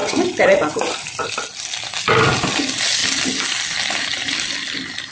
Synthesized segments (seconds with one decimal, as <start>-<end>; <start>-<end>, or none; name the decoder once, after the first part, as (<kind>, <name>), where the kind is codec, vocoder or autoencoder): none